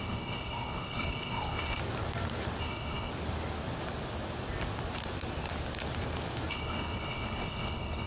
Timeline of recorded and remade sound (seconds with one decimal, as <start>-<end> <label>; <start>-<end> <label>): 0.0-1.8 remade; 1.8-2.6 recorded; 2.6-3.1 remade; 3.1-6.5 recorded; 6.5-8.1 remade